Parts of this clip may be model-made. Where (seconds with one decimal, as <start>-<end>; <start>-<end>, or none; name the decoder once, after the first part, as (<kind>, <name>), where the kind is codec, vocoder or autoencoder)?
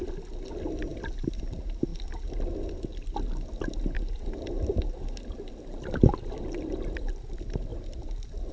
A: 0.9-1.4 (vocoder, BigVGAN v2)